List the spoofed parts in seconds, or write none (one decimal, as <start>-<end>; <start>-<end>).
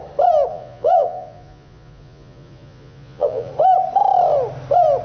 0.5-3.5